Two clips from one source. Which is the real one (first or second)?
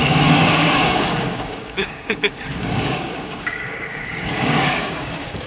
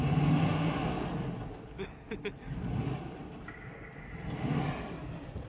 second